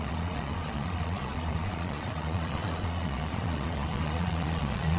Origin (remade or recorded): remade